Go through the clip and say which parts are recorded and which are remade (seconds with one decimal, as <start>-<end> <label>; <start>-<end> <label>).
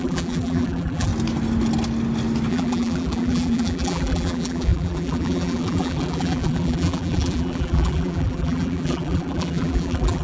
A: 0.0-1.1 remade; 1.1-2.5 recorded; 2.5-10.2 remade